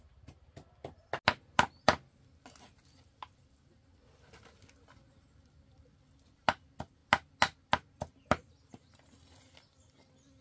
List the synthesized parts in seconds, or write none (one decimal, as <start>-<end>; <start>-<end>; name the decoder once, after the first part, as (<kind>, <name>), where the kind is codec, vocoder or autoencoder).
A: none